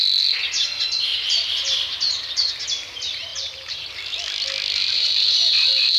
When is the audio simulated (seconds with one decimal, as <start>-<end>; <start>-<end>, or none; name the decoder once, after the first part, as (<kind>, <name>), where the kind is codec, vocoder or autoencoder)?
1.1-2.5 (vocoder, BigVGAN v2); 3.3-3.9; 4.8-6.0